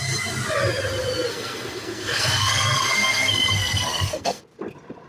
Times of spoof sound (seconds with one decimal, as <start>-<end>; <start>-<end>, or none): 1.3-4.4